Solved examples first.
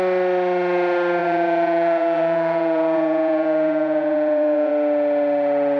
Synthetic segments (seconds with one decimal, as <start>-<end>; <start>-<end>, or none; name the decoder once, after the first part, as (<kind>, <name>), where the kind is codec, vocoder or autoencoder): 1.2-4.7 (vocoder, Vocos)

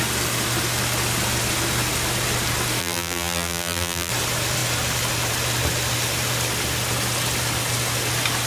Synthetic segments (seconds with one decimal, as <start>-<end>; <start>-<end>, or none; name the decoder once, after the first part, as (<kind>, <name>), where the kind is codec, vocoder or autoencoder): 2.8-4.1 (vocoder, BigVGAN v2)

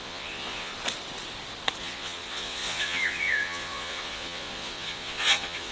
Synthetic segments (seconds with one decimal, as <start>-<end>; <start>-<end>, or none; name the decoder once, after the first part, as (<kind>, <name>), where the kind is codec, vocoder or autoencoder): 0.0-0.7 (vocoder, Vocos); 1.8-5.7